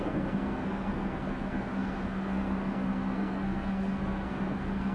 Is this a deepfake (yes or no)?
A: yes